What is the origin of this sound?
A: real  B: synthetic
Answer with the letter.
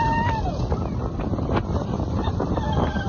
A